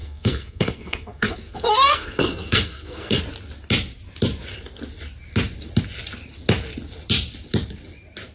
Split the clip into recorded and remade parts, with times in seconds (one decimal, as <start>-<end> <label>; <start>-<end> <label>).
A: 0.0-3.2 remade; 3.2-8.3 recorded

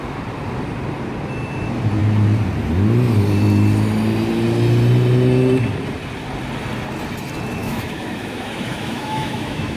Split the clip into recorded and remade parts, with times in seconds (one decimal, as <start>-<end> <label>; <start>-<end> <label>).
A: 0.0-7.6 recorded; 7.6-9.8 remade

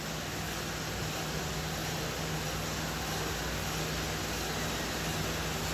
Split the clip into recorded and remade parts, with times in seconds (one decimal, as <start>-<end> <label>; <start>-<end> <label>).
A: 0.0-5.7 recorded

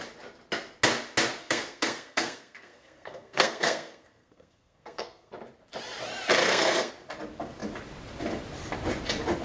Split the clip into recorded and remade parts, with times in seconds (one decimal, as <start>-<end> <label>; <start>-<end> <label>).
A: 0.0-1.4 recorded; 1.4-5.3 remade; 5.3-6.4 recorded; 6.4-6.9 remade; 6.9-9.4 recorded

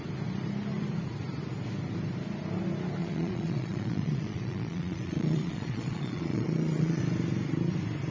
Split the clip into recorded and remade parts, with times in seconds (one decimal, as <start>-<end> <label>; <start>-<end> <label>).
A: 0.0-3.0 recorded; 3.0-7.0 remade; 7.0-8.1 recorded

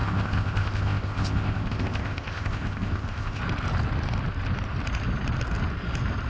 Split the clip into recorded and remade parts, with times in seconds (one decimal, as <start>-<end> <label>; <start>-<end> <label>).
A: 0.0-3.4 remade; 3.4-6.3 recorded

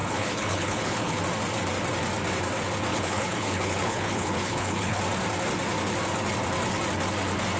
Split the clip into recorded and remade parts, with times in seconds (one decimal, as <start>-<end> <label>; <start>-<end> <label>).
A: 0.0-1.2 remade; 1.2-2.9 recorded; 2.9-5.0 remade; 5.0-7.6 recorded

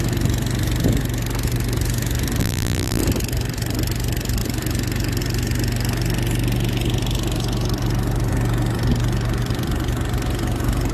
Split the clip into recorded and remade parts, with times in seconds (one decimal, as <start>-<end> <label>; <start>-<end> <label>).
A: 0.0-2.4 recorded; 2.4-3.0 remade; 3.0-10.9 recorded